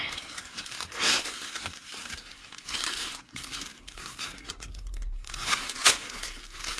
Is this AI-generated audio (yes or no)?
yes